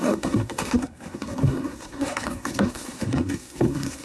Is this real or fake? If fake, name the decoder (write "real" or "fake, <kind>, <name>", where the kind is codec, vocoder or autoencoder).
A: fake, codec, SNAC